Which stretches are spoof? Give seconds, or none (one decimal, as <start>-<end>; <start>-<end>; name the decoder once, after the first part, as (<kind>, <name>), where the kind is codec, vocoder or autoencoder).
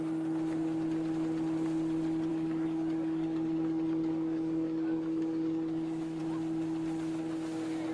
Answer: 2.3-6.2 (codec, DAC)